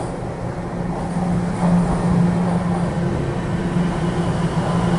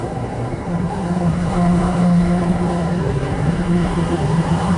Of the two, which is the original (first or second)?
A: first